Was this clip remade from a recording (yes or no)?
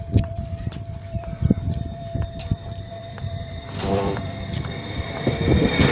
yes